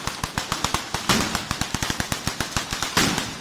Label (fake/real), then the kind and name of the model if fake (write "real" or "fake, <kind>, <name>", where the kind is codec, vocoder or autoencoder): real